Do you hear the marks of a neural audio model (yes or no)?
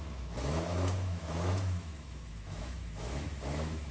yes